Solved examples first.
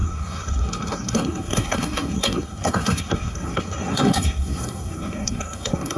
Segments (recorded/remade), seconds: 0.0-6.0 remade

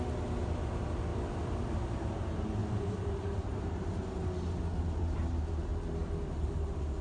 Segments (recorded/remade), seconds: 0.0-1.1 recorded; 1.1-1.8 remade; 1.8-2.6 recorded; 2.6-4.0 remade; 4.0-5.7 recorded; 5.7-7.0 remade

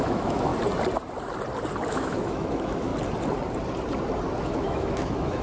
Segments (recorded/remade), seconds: 0.0-0.5 remade; 0.5-1.9 recorded; 1.9-2.9 remade; 2.9-4.4 recorded; 4.4-5.4 remade

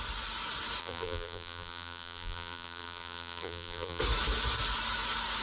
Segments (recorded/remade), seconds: 0.0-0.8 recorded; 0.8-4.0 remade; 4.0-5.4 recorded

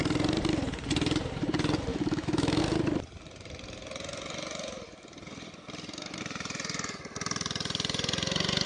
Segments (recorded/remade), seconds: 0.0-1.9 recorded; 1.9-2.6 remade; 2.6-8.7 recorded

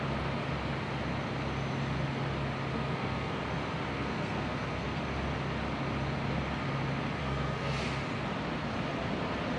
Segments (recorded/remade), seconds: 0.0-2.7 recorded; 2.7-3.4 remade; 3.4-3.9 recorded; 3.9-5.0 remade; 5.0-7.2 recorded; 7.2-7.8 remade; 7.8-9.6 recorded